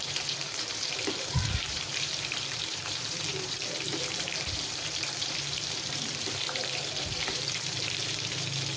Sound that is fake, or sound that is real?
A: fake